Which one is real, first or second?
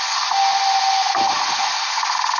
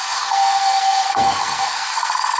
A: first